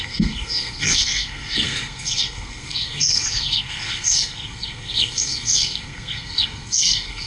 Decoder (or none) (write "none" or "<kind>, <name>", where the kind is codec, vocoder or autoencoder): codec, SNAC